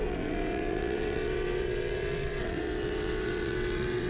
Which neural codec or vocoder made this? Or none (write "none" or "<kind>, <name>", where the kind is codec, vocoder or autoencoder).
vocoder, WaveNeXt